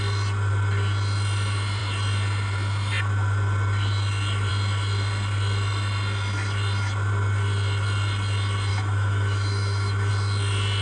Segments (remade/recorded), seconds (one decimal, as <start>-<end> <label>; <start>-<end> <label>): 0.0-8.7 recorded; 8.7-10.1 remade; 10.1-10.8 recorded